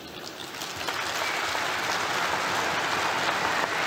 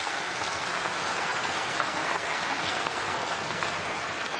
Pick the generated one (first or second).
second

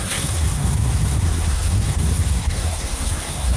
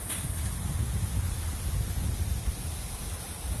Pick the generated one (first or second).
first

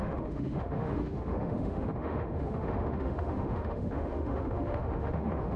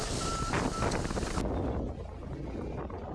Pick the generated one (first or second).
first